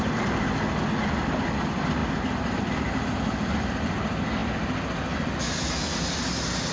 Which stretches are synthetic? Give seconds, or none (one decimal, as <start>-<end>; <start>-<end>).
none

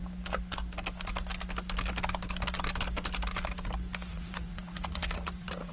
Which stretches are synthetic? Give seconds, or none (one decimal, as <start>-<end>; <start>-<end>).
4.1-5.7